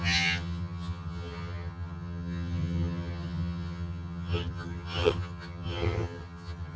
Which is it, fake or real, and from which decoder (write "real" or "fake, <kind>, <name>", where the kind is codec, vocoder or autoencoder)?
fake, vocoder, HiFi-GAN